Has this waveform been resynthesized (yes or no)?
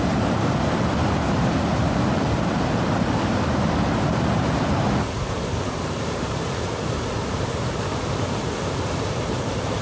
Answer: yes